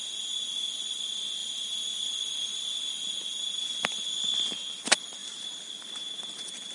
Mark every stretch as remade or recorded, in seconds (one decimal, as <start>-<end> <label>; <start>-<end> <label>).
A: 0.0-1.4 recorded; 1.4-2.1 remade; 2.1-5.2 recorded; 5.2-5.7 remade; 5.7-6.7 recorded